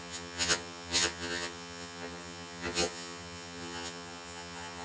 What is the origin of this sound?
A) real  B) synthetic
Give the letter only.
B